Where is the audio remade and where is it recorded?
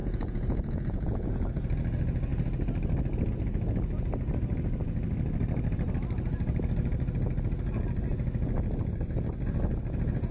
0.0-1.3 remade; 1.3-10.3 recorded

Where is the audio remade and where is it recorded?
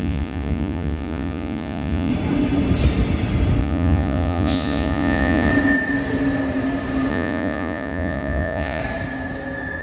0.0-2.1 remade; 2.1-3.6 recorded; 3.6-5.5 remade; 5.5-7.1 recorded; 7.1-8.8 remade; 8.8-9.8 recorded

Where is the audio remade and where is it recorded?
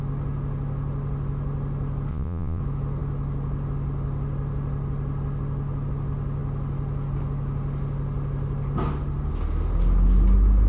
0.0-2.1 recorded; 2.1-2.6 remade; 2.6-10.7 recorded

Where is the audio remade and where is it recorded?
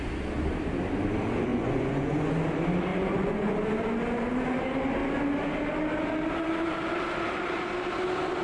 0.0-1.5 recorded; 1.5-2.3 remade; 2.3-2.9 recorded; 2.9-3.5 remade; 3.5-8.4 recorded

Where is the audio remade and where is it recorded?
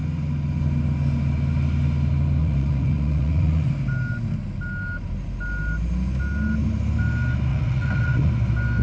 0.0-2.4 recorded; 2.4-3.7 remade; 3.7-7.5 recorded; 7.5-8.3 remade; 8.3-8.8 recorded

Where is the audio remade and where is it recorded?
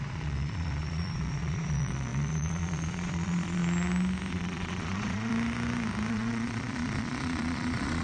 0.0-3.6 remade; 3.6-4.3 recorded; 4.3-5.3 remade; 5.3-6.1 recorded; 6.1-8.0 remade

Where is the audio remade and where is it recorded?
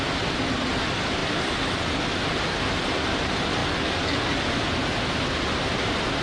0.0-6.2 recorded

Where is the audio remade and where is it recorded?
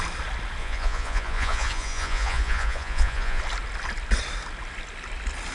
0.0-0.6 recorded; 0.6-3.4 remade; 3.4-5.5 recorded